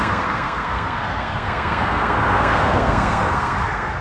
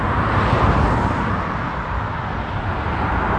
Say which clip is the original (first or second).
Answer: second